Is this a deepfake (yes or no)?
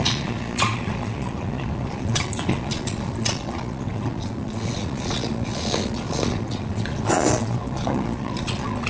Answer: yes